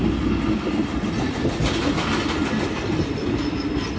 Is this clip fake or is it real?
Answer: real